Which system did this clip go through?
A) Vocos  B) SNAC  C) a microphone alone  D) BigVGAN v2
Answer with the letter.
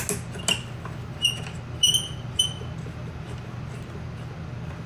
C